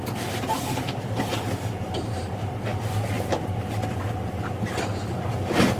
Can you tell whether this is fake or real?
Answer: real